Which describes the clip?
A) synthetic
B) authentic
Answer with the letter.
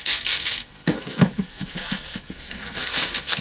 A